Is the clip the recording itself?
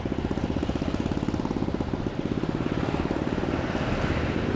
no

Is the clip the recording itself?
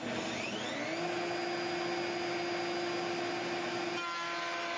yes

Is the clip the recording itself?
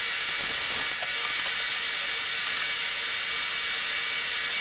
yes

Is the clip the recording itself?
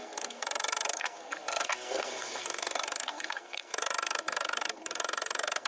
no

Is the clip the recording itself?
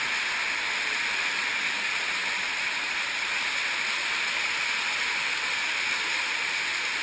yes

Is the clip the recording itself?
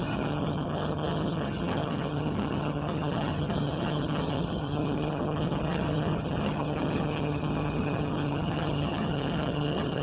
no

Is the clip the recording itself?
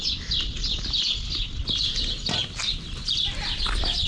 yes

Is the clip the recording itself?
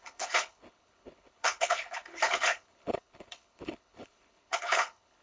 no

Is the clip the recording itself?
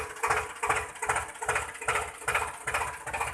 yes